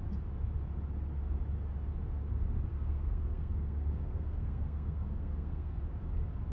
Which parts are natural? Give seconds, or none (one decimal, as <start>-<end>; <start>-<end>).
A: 0.0-2.7; 5.8-6.5